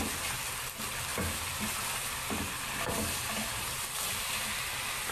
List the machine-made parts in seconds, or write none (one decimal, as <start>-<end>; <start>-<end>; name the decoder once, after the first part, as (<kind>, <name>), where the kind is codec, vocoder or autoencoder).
none